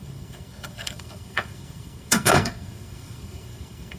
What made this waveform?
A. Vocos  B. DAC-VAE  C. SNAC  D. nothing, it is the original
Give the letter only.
C